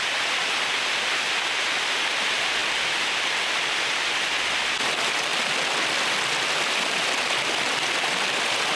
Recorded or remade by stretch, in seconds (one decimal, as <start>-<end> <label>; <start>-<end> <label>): 0.0-8.8 recorded